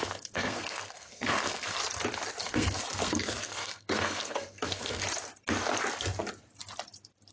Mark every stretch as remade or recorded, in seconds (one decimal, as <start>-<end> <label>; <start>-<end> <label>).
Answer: 0.0-1.8 remade; 1.8-2.4 recorded; 2.4-5.0 remade; 5.0-7.3 recorded